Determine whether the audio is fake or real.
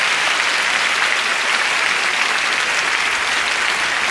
real